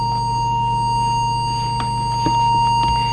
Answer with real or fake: real